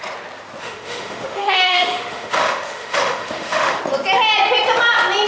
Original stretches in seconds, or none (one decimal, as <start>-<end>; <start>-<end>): 0.0-0.6; 3.8-5.3